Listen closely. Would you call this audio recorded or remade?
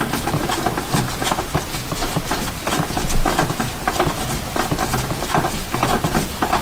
recorded